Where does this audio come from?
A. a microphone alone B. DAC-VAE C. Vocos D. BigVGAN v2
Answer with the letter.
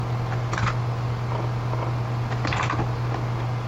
A